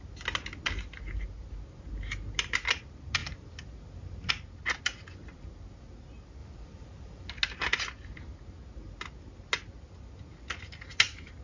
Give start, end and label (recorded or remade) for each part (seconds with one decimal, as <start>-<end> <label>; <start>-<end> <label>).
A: 0.0-6.4 recorded; 6.4-7.3 remade; 7.3-11.4 recorded